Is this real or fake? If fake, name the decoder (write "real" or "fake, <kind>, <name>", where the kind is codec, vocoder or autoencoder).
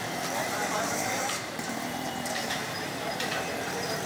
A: fake, vocoder, BigVGAN v2